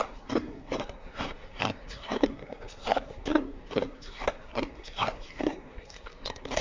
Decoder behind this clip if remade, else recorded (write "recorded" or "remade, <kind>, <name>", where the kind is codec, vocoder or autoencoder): remade, codec, SNAC